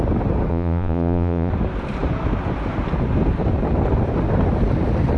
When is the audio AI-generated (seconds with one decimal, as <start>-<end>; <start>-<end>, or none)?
0.5-1.5